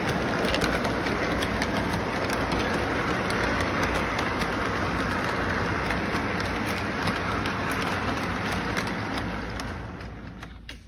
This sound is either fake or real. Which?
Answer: real